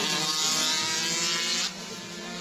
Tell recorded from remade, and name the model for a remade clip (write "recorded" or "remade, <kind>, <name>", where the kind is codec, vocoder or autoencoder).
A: recorded